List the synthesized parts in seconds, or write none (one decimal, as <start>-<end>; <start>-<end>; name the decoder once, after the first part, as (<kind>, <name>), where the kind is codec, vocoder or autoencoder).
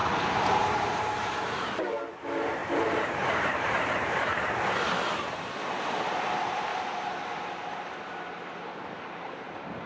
0.0-4.3 (vocoder, BigVGAN v2); 6.3-6.7; 8.6-9.9